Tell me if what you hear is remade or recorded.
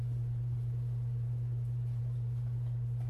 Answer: remade